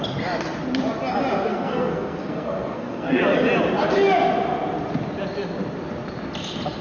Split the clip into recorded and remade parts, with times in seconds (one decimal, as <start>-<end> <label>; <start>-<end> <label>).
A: 0.0-1.5 recorded; 1.5-3.2 remade; 3.2-6.8 recorded